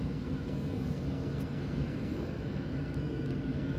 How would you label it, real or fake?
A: fake